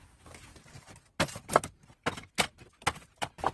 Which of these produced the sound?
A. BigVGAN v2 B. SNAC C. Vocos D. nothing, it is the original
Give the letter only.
D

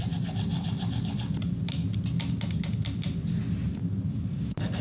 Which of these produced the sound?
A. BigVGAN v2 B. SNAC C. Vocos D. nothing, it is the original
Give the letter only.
D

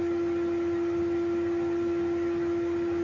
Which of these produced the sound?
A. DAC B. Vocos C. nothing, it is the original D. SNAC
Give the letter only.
C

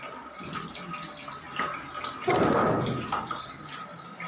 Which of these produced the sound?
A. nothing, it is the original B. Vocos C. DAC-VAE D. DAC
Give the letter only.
A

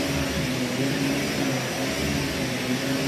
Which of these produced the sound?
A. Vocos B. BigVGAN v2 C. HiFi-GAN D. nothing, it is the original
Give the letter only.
D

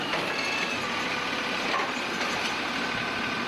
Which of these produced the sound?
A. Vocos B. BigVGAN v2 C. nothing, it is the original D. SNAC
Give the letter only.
C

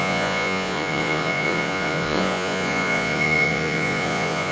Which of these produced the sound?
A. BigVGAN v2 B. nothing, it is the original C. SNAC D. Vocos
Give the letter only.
D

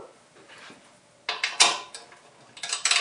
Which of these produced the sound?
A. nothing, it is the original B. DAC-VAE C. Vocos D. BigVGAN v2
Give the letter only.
A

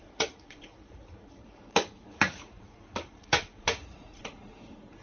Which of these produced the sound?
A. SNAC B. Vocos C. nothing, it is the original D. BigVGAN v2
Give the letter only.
B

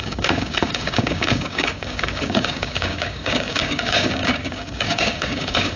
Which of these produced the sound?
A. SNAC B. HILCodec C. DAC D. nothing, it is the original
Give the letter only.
C